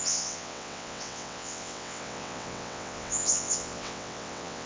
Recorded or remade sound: remade